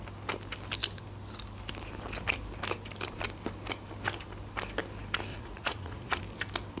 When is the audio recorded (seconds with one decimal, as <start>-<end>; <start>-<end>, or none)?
0.0-5.3; 6.2-6.8